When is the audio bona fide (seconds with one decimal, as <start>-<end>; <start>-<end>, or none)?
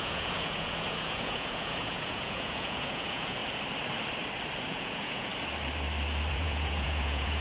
3.4-4.6; 5.3-6.3